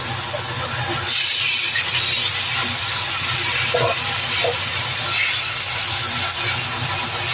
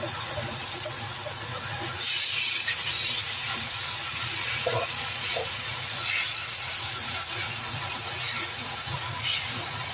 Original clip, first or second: first